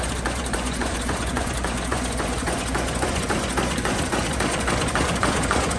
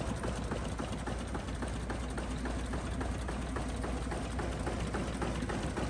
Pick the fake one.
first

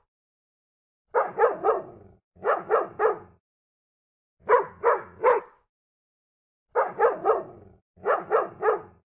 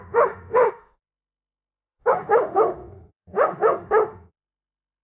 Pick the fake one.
second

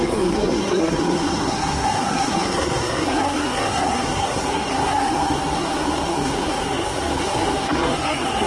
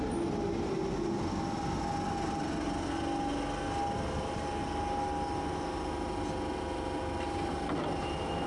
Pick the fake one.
first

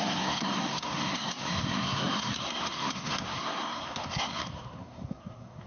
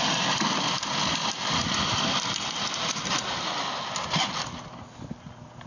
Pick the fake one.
first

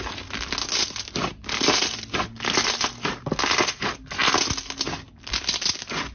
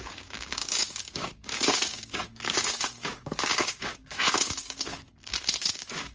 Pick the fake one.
second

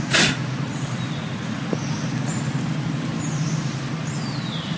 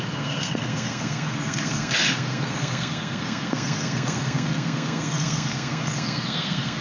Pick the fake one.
second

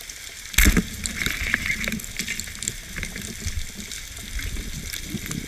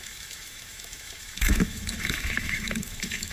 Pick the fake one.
second